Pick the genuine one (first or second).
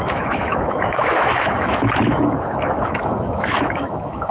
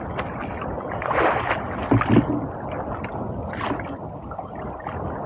second